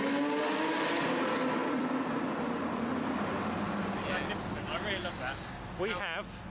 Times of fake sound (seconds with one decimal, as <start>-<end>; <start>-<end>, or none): 1.6-3.4